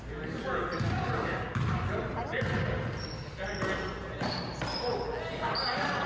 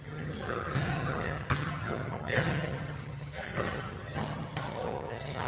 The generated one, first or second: second